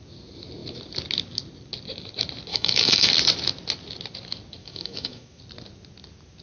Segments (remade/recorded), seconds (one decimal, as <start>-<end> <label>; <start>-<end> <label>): 0.0-2.5 recorded; 2.5-3.1 remade; 3.1-4.6 recorded; 4.6-5.4 remade; 5.4-6.4 recorded